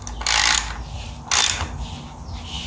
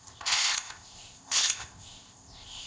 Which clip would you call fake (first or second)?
second